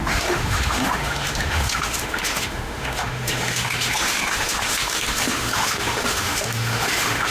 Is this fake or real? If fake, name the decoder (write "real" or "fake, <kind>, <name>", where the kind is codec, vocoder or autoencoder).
fake, autoencoder, DAC-VAE